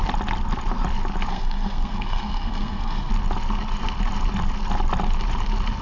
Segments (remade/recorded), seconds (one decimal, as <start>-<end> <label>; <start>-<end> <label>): 0.0-1.3 recorded; 1.3-3.1 remade; 3.1-5.8 recorded

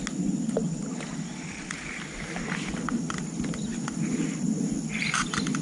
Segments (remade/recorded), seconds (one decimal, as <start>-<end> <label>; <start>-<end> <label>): 0.0-5.6 recorded

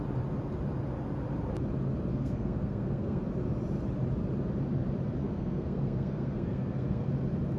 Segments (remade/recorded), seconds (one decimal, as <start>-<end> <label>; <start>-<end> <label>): 0.0-2.1 recorded; 2.1-3.2 remade; 3.2-5.2 recorded; 5.2-7.1 remade; 7.1-7.6 recorded

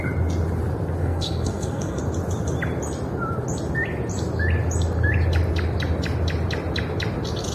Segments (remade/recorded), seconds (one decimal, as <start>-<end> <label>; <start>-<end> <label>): 0.0-1.0 recorded; 1.0-2.0 remade; 2.0-7.5 recorded

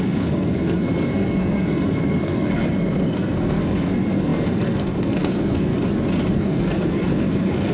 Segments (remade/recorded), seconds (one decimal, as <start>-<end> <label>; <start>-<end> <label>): 0.0-5.7 remade; 5.7-6.3 recorded; 6.3-7.7 remade

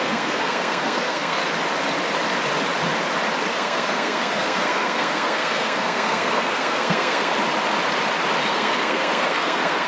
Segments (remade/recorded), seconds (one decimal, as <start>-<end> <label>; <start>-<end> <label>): 0.0-1.4 remade; 1.4-3.5 recorded; 3.5-7.3 remade; 7.3-8.5 recorded; 8.5-9.9 remade